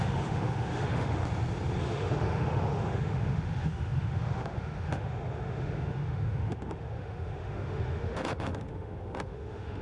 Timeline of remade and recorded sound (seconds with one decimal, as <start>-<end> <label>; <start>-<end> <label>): 0.0-1.2 remade; 1.2-1.8 recorded; 1.8-9.8 remade